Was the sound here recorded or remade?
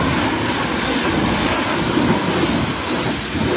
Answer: recorded